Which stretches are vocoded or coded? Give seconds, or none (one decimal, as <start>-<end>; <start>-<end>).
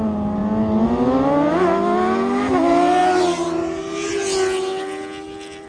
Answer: none